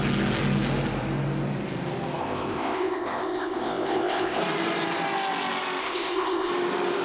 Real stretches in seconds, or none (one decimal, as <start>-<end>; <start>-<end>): 0.0-2.2; 4.4-5.8; 6.5-7.0